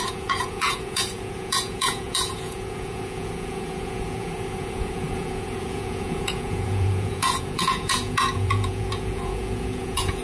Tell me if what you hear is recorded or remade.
remade